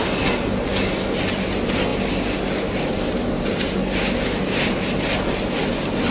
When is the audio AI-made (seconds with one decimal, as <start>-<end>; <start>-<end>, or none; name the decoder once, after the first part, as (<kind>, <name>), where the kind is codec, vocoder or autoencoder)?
none